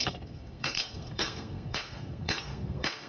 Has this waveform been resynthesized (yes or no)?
yes